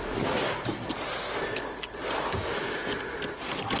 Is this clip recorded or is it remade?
recorded